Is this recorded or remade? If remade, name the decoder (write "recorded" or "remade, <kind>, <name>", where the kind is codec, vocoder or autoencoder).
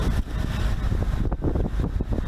recorded